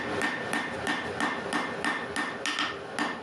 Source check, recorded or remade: recorded